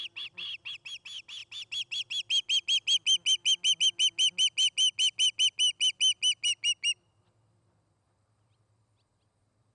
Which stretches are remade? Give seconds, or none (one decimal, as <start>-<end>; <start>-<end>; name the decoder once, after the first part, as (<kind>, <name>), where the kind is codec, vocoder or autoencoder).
none